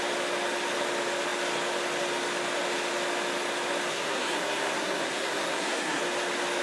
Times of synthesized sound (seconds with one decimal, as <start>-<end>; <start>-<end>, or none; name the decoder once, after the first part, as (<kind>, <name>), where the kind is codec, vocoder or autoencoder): 3.9-6.0 (codec, SNAC)